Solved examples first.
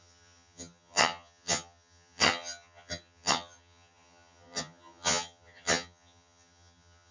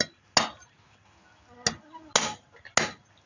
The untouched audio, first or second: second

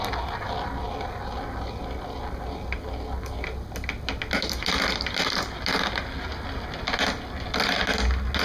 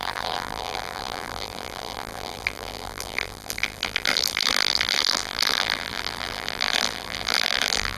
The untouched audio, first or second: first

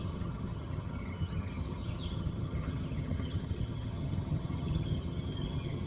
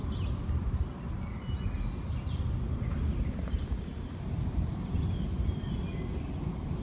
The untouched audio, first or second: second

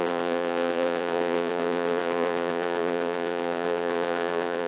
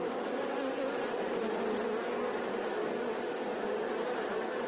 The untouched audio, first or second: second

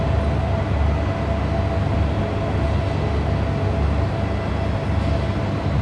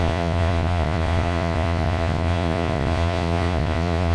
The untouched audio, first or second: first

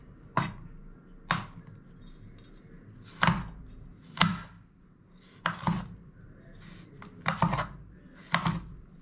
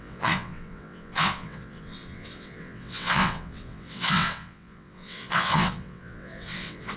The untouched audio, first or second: first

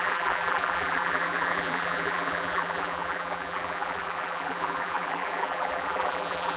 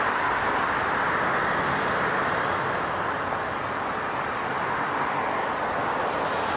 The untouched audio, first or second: second